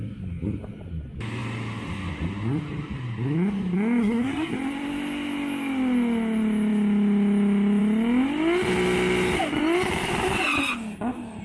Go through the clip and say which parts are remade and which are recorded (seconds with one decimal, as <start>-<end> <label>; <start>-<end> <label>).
0.0-4.0 recorded; 4.0-4.5 remade; 4.5-11.4 recorded